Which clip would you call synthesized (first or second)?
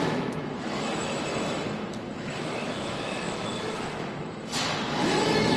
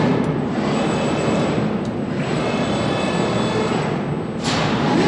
first